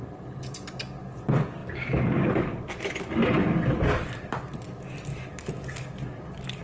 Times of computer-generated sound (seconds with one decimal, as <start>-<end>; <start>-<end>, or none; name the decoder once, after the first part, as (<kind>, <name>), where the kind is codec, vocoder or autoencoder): 5.1-6.6 (codec, DAC)